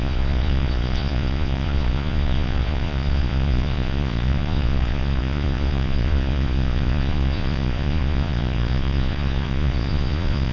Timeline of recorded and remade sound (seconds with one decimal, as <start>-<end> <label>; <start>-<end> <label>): 0.0-10.5 remade